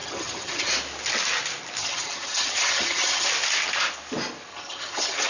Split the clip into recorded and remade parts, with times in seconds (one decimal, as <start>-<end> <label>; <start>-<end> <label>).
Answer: 0.0-0.7 remade; 0.7-1.8 recorded; 1.8-3.3 remade; 3.3-4.5 recorded; 4.5-5.3 remade